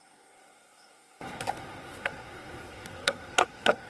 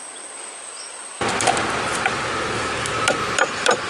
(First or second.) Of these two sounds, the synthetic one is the first